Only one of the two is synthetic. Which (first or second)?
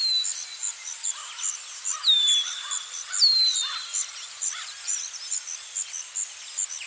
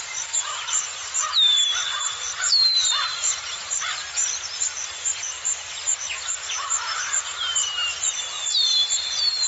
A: second